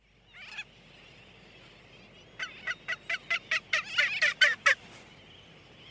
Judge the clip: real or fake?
real